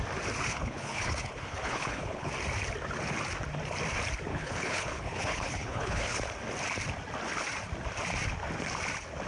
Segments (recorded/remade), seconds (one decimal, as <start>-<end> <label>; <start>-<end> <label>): 0.0-0.5 recorded; 0.5-2.3 remade; 2.3-4.3 recorded; 4.3-6.2 remade; 6.2-9.3 recorded